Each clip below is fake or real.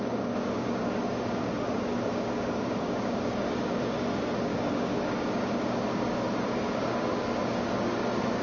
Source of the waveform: fake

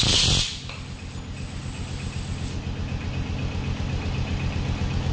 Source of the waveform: real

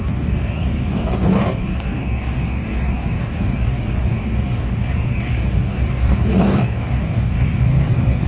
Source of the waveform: fake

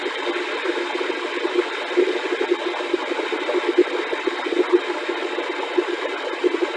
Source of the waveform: real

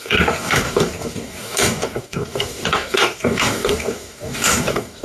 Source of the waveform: fake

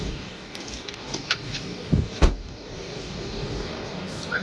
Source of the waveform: fake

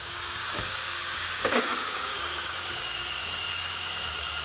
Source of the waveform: fake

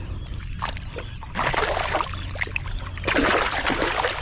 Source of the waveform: real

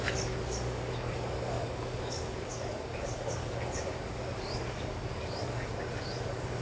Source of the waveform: fake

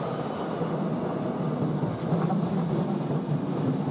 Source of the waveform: real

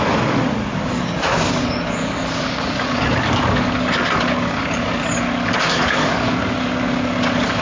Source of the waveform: fake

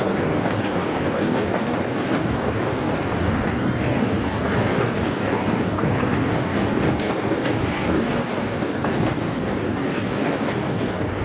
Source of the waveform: fake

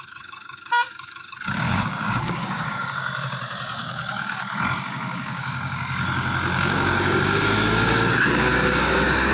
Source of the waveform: fake